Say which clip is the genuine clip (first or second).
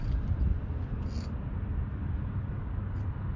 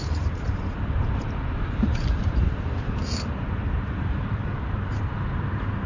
first